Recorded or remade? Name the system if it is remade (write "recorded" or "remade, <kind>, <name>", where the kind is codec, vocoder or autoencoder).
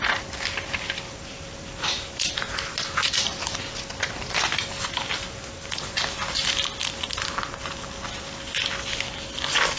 recorded